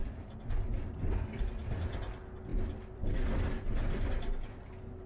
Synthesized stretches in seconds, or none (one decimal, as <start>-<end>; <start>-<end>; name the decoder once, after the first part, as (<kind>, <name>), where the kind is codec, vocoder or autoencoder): none